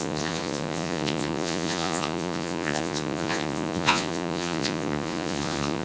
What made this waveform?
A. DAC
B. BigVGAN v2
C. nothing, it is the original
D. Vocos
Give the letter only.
D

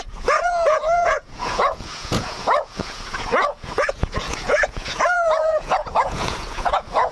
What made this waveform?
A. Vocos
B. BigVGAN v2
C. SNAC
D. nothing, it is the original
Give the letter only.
A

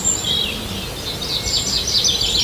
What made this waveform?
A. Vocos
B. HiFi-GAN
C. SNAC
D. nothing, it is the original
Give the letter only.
D